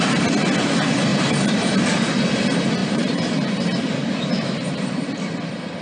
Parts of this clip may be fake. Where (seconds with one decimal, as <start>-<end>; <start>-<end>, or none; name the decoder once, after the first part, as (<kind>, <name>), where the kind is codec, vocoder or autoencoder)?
1.1-1.6 (vocoder, BigVGAN v2); 2.8-4.9